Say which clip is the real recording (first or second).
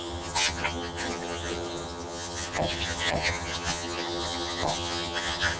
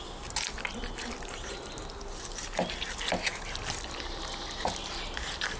second